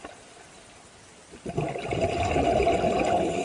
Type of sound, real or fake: real